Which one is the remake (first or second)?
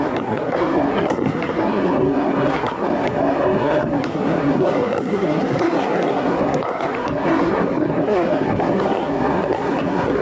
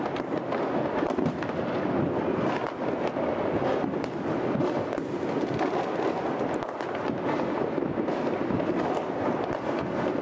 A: first